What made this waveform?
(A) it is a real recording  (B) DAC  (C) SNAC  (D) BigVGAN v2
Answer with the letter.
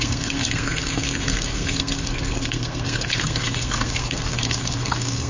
C